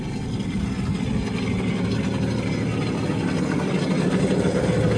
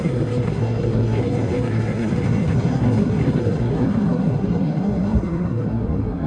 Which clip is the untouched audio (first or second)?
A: first